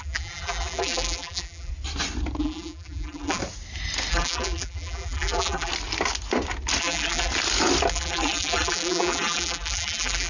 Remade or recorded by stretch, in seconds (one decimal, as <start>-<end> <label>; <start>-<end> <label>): 0.0-1.7 remade; 1.7-2.4 recorded; 2.4-3.4 remade; 3.4-4.1 recorded; 4.1-5.7 remade; 5.7-6.8 recorded; 6.8-7.3 remade; 7.3-7.9 recorded; 7.9-10.3 remade